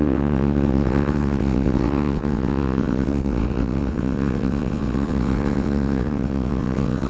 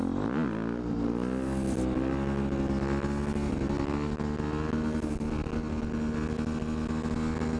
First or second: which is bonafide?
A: second